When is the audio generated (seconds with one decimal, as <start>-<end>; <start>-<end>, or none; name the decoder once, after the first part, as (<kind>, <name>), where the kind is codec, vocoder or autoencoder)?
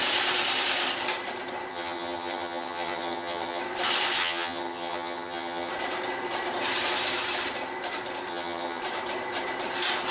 1.7-3.6 (vocoder, HiFi-GAN); 4.2-5.7; 8.3-8.8